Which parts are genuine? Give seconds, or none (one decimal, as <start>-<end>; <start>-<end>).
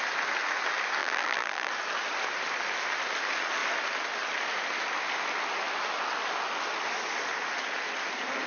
0.0-1.0; 1.7-8.5